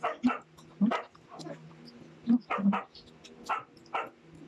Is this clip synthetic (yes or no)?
no